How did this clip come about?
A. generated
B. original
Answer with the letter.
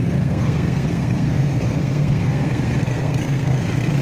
A